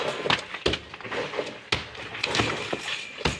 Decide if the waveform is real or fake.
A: real